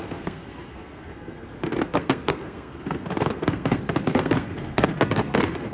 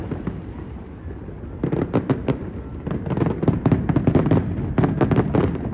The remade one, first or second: first